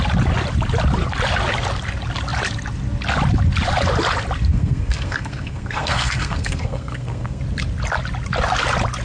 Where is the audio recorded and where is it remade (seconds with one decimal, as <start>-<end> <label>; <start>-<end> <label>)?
0.0-4.5 recorded; 4.5-7.4 remade; 7.4-9.0 recorded